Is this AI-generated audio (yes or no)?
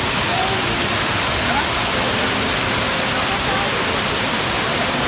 no